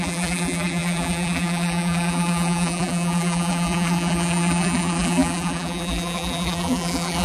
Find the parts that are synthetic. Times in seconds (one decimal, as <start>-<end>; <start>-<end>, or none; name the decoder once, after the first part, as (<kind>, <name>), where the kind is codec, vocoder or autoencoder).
0.0-7.2 (vocoder, BigVGAN v2)